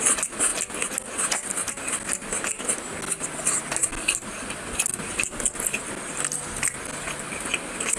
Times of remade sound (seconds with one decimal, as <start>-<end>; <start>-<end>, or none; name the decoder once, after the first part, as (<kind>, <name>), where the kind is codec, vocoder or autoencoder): none